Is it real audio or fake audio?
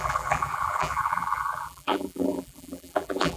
fake